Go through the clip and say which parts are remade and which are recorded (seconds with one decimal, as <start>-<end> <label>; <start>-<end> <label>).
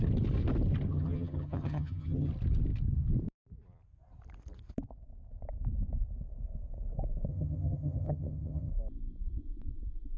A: 0.0-0.9 recorded; 0.9-2.3 remade; 2.3-7.3 recorded; 7.3-8.7 remade; 8.7-10.2 recorded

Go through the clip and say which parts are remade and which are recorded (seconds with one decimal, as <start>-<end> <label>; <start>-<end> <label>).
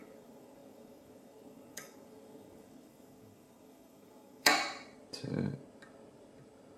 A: 0.0-4.5 remade; 4.5-6.8 recorded